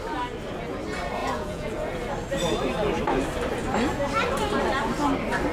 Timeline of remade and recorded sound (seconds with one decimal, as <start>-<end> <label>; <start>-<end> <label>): 0.0-1.2 recorded; 1.2-1.9 remade; 1.9-5.5 recorded